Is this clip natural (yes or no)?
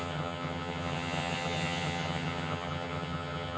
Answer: no